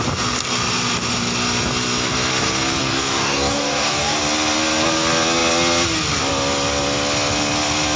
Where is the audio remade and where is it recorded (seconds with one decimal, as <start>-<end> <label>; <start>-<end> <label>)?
0.0-2.8 recorded; 2.8-4.2 remade; 4.2-8.0 recorded